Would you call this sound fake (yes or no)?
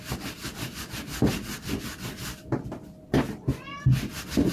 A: no